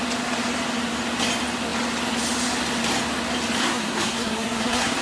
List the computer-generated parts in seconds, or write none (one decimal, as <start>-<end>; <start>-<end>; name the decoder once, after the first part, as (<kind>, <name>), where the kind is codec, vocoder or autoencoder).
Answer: 3.6-5.0 (codec, SNAC)